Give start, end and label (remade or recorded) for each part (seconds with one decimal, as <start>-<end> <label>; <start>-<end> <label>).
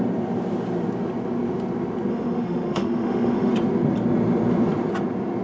0.0-2.1 recorded; 2.1-3.5 remade; 3.5-5.4 recorded